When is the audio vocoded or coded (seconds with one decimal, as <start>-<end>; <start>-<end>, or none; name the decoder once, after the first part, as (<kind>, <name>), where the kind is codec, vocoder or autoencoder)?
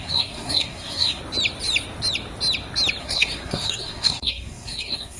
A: 0.0-1.2 (codec, SNAC); 3.0-5.2